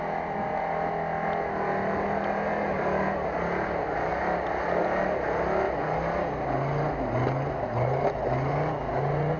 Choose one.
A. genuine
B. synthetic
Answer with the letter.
A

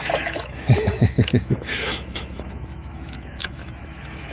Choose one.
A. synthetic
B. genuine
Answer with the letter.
A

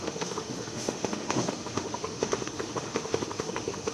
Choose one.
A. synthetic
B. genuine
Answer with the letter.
A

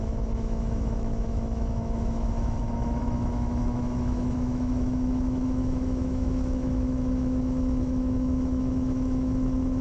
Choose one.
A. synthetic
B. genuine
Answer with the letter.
A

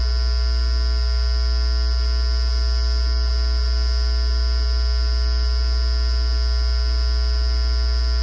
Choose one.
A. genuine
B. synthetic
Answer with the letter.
A